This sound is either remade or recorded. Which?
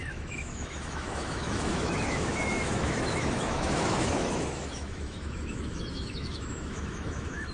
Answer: remade